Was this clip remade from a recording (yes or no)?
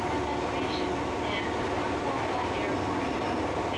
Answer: no